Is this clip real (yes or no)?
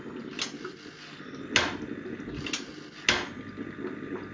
yes